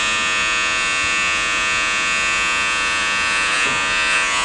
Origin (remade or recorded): remade